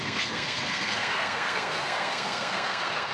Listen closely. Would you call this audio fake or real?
fake